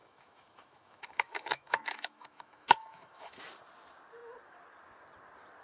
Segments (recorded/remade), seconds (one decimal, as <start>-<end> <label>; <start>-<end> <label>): 0.0-3.4 remade; 3.4-5.6 recorded